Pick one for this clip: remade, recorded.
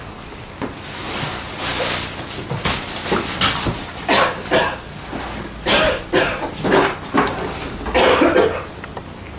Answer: recorded